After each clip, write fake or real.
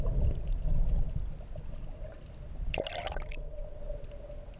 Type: real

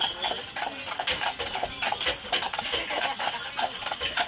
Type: real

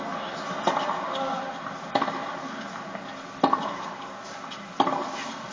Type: real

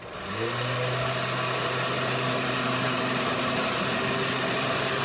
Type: real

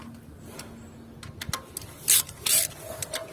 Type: real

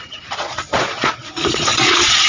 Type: fake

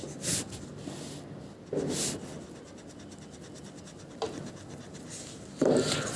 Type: real